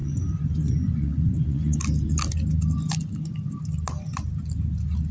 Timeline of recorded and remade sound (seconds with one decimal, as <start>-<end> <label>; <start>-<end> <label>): 0.0-1.8 remade; 1.8-5.1 recorded